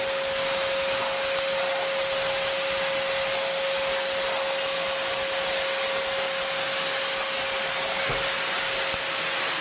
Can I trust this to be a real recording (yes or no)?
yes